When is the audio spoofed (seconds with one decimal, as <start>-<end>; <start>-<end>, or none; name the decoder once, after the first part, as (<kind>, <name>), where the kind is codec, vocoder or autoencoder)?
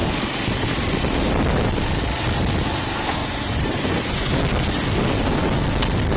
3.2-4.4 (vocoder, Vocos)